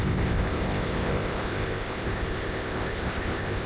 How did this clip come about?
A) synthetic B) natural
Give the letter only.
A